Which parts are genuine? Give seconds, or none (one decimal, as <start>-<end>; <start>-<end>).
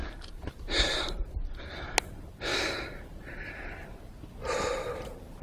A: 1.5-2.5; 3.0-5.4